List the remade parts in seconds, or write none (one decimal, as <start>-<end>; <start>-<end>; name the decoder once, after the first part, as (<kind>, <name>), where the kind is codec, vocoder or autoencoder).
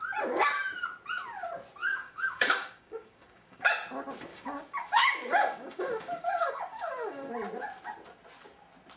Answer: 1.8-3.7 (codec, DAC); 4.3-7.3